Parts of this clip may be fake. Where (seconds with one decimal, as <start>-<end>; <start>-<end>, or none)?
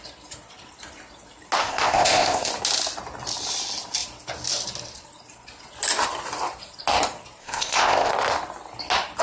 1.6-2.5; 7.4-8.1